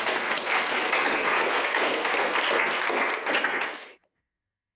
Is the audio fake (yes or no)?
yes